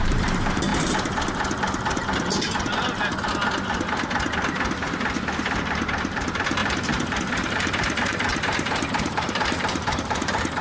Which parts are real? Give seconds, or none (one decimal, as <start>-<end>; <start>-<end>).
0.7-5.6